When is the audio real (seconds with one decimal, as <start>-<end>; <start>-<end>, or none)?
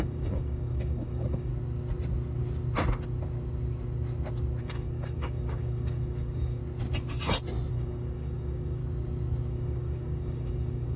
1.5-4.6; 6.6-7.7; 8.8-9.5